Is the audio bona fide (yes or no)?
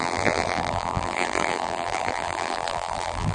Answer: no